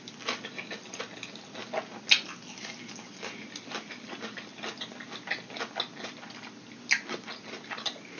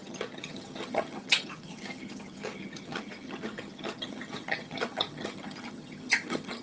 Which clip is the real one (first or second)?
first